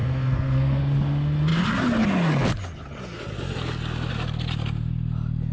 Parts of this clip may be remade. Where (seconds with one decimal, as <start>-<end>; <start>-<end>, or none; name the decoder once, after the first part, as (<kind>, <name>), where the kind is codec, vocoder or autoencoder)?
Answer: 0.0-0.8 (codec, SNAC)